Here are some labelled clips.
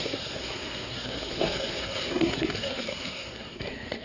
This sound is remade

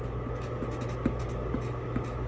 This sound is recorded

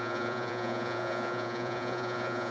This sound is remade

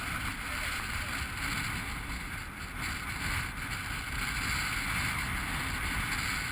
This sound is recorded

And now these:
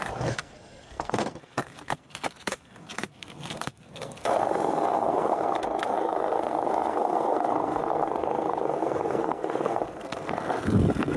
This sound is remade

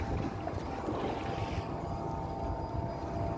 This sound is recorded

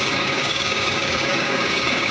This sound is remade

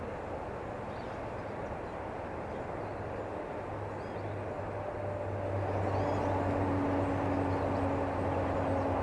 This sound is recorded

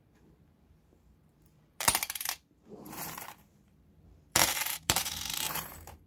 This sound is remade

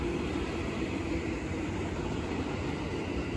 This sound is recorded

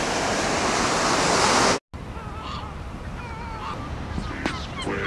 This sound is recorded